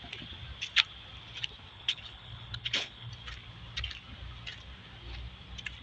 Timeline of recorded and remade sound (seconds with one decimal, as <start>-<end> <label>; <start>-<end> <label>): 0.0-1.7 recorded; 1.7-3.1 remade; 3.1-5.8 recorded